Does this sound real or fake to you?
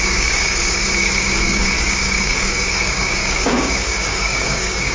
fake